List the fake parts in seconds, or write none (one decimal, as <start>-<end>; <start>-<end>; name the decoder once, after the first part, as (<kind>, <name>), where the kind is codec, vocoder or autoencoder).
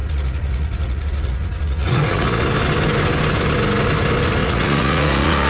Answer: 0.0-2.4 (vocoder, Vocos); 4.4-5.5